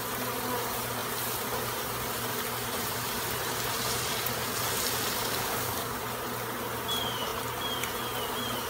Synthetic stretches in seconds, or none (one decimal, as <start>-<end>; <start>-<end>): 5.2-6.0